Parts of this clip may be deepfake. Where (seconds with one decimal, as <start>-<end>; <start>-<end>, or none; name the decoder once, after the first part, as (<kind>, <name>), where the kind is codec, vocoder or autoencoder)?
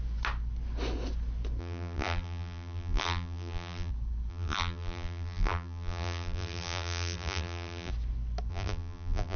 1.6-3.9 (vocoder, BigVGAN v2); 4.3-7.9; 8.5-9.4